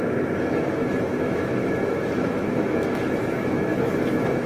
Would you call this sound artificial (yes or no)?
yes